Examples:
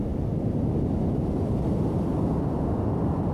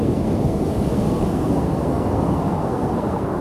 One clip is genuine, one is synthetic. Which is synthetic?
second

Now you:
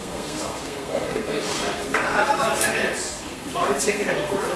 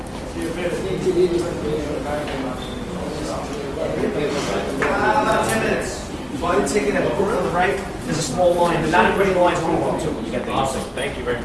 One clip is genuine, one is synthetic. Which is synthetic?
first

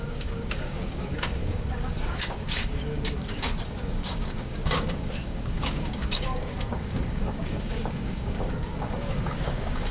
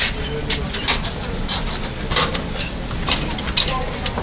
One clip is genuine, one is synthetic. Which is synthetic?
first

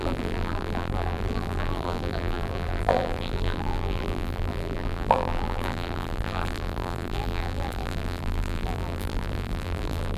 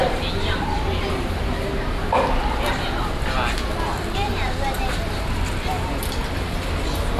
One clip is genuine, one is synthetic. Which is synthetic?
first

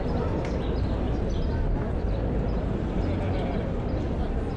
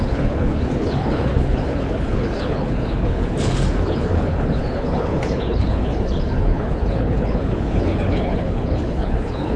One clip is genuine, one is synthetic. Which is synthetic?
second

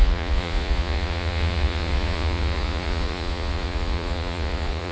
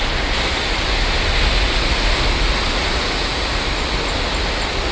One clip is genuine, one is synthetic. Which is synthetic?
first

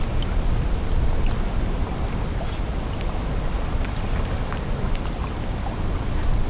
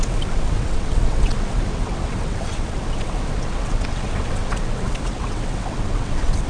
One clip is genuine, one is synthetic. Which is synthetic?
second